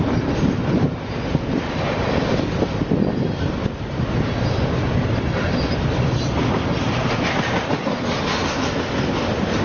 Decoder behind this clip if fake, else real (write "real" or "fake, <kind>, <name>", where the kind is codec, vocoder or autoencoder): real